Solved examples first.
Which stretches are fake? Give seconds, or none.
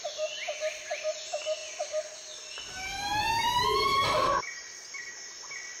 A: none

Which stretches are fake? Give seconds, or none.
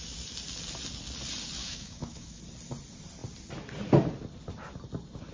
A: 1.6-2.4